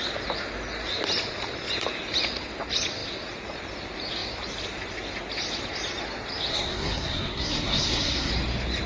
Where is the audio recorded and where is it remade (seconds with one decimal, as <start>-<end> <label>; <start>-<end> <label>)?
0.0-6.5 recorded; 6.5-8.3 remade; 8.3-8.9 recorded